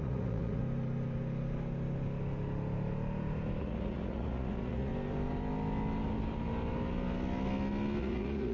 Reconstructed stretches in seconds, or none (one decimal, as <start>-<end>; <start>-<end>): 0.0-0.6; 3.6-4.9; 8.0-8.5

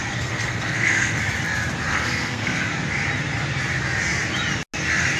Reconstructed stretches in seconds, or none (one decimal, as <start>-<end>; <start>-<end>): 0.0-1.2; 1.9-2.6